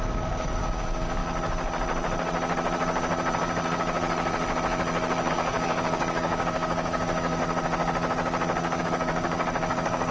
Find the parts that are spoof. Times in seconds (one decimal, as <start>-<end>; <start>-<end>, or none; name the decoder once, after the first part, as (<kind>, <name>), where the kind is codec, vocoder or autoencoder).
0.0-1.2 (codec, DAC); 5.3-7.4; 8.8-10.1